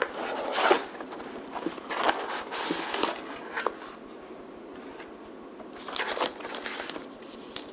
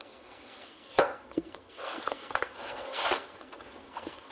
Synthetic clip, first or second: second